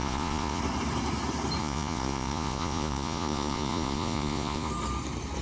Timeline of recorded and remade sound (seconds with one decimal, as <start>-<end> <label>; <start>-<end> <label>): 0.0-0.6 remade; 0.6-1.6 recorded; 1.6-4.7 remade; 4.7-5.4 recorded